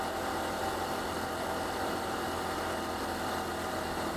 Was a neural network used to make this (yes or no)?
no